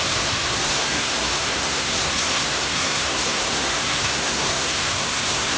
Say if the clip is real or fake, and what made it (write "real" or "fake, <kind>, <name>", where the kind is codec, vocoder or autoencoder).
fake, codec, SNAC